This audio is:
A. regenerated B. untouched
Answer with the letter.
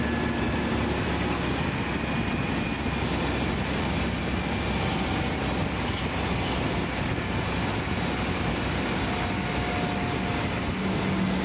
B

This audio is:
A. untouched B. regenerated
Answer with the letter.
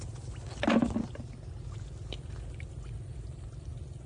A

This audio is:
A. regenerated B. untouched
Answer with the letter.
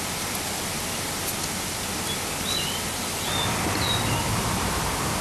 B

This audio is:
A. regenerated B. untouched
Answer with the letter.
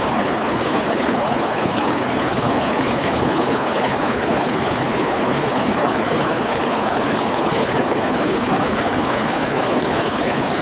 A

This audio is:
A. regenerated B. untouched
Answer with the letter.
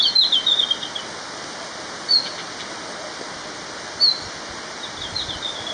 B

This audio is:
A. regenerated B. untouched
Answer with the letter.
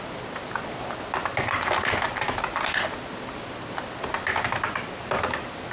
B